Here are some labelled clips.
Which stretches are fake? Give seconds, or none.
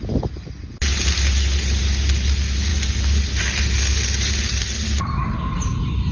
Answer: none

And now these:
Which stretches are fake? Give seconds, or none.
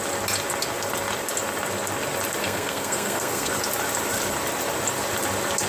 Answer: 2.4-3.5 (codec, SNAC)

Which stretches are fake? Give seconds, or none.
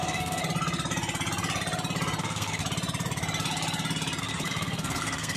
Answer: 0.0-0.4 (codec, SNAC); 2.2-2.6; 4.2-5.4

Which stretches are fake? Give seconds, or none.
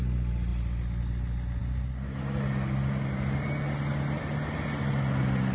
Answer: none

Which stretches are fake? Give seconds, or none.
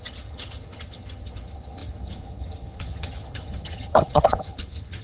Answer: 0.0-5.0 (vocoder, HiFi-GAN)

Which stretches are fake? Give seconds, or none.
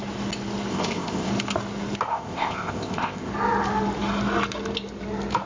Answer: 0.7-1.3 (codec, ZipCodec); 2.1-3.3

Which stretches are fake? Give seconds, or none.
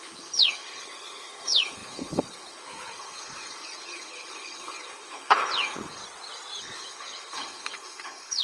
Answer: 0.0-6.0 (codec, HILCodec); 6.6-8.4